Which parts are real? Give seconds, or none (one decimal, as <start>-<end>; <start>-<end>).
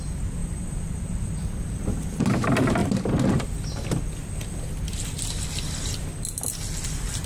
0.0-0.4; 1.7-7.3